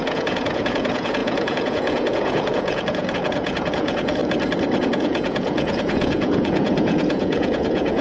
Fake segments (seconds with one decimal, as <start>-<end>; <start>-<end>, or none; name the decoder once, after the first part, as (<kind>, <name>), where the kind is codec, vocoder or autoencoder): 0.0-4.2 (vocoder, Vocos); 4.8-8.0